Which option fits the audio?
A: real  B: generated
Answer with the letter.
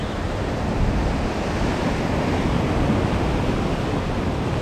A